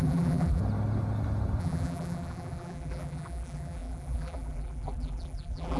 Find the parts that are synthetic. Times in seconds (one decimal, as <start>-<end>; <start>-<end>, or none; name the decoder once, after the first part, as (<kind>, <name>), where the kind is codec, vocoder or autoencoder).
0.0-0.6 (vocoder, BigVGAN v2); 1.6-5.8